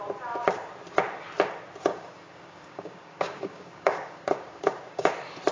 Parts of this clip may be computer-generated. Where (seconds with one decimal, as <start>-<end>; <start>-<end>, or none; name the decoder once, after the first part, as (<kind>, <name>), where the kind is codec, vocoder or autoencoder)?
1.9-5.1 (codec, DAC)